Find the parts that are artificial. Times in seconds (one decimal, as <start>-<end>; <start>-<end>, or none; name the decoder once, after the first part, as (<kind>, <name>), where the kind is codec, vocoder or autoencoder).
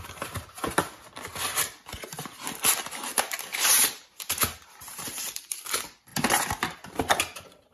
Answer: 3.5-5.6 (vocoder, BigVGAN v2)